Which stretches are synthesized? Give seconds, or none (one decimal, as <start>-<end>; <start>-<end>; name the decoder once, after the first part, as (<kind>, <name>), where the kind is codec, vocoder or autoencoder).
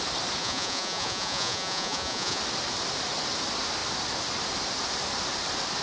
0.4-2.4 (vocoder, Vocos)